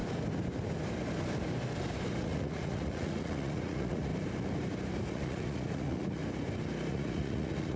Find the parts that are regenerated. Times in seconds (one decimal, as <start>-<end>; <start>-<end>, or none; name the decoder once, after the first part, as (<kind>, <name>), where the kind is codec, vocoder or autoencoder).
2.2-4.1 (vocoder, Vocos); 5.1-6.2; 6.9-7.8